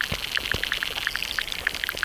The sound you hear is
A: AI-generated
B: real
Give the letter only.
B